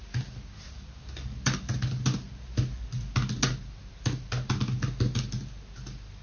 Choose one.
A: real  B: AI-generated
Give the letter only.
A